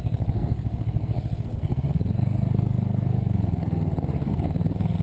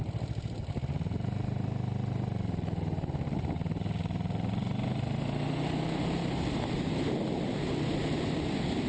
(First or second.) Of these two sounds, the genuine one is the second